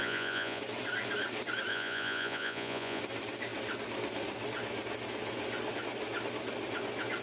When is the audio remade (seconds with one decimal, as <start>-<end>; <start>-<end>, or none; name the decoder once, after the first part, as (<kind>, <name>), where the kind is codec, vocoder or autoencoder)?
0.0-0.6 (vocoder, Vocos); 1.7-3.0